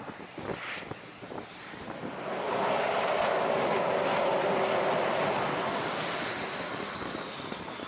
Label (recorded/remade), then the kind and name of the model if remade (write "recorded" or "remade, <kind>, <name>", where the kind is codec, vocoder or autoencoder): recorded